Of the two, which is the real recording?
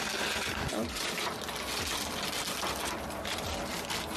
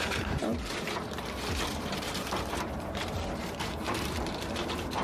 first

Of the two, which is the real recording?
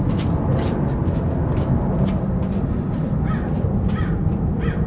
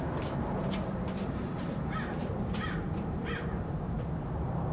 first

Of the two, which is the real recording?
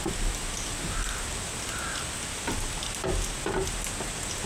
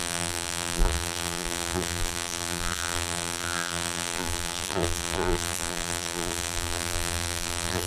first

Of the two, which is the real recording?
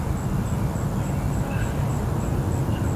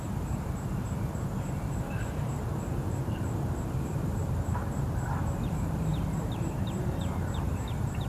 first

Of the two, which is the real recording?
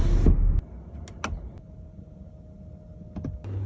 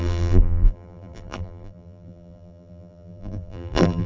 first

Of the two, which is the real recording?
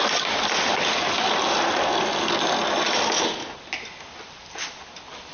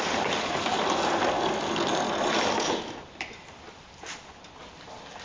first